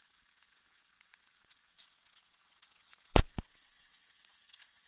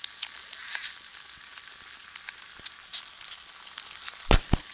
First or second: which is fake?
first